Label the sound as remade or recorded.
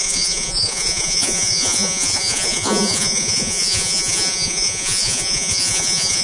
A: remade